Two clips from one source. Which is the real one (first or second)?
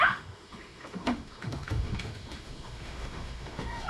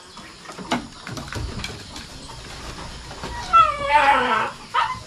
second